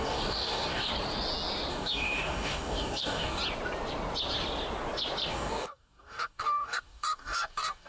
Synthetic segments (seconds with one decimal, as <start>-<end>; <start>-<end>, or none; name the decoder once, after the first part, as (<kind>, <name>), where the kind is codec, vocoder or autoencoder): 0.0-0.9 (codec, DAC); 1.7-3.4; 5.3-7.9